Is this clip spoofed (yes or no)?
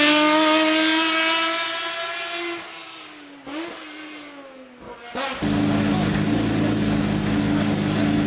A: no